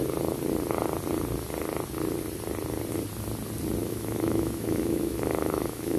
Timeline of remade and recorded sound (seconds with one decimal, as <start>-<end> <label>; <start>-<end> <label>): 0.0-3.8 recorded; 3.8-6.0 remade